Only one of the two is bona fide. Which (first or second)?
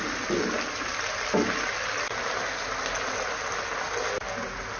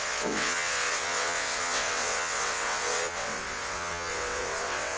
first